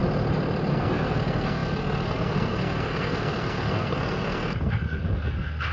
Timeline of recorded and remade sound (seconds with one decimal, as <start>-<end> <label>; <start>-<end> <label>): 0.0-0.7 recorded; 0.7-5.7 remade